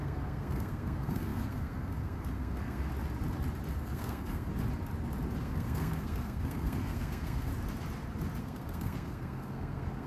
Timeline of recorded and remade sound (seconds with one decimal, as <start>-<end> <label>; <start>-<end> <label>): 0.0-2.9 remade; 2.9-3.7 recorded; 3.7-4.5 remade; 4.5-5.4 recorded; 5.4-7.5 remade; 7.5-8.4 recorded; 8.4-10.1 remade